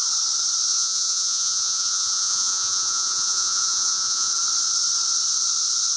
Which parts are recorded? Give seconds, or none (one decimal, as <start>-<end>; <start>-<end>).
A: 0.0-0.7; 4.3-6.0